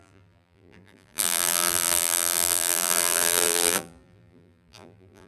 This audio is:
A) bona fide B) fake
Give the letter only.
B